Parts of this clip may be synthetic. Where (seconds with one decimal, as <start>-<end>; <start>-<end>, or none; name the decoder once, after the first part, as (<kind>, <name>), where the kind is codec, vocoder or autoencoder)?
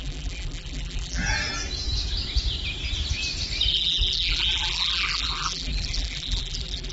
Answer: 0.0-1.2 (vocoder, BigVGAN v2); 3.7-6.9